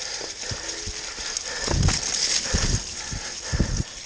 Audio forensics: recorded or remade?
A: recorded